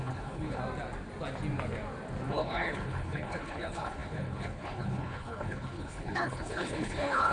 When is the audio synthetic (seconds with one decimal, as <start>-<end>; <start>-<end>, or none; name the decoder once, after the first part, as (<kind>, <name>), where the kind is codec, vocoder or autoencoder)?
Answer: 0.0-0.6 (codec, HILCodec); 2.3-7.3